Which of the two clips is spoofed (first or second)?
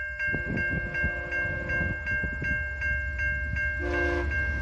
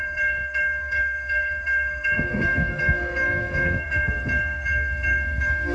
second